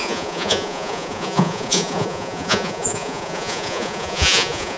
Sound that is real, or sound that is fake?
fake